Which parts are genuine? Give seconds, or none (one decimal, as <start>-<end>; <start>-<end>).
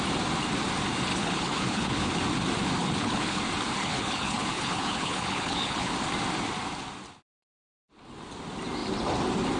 0.0-1.1; 2.1-2.8; 3.4-3.8; 5.9-9.6